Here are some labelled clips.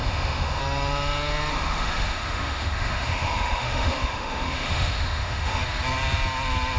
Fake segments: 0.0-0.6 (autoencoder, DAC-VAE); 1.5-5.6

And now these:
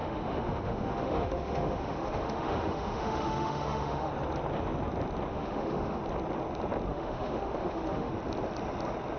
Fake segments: 0.0-4.1 (autoencoder, DAC-VAE); 5.3-6.0; 6.9-8.1

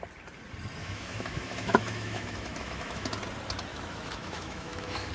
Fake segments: 0.8-3.1 (autoencoder, DAC-VAE); 3.7-5.1

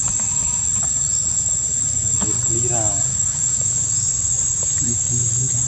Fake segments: 3.1-3.7 (autoencoder, DAC-VAE)